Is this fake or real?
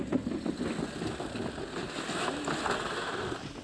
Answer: real